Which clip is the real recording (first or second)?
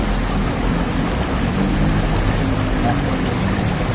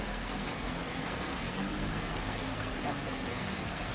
first